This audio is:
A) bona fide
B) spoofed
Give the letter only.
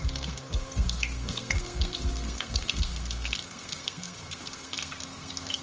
B